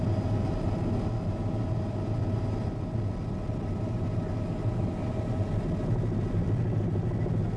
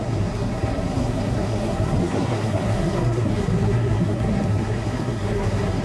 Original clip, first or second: first